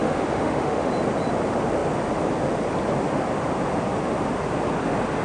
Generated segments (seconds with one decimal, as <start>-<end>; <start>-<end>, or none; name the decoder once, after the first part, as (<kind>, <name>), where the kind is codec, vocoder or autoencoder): 0.0-0.9 (autoencoder, DAC-VAE)